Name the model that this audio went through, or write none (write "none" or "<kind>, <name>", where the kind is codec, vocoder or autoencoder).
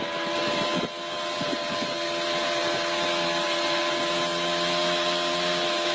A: none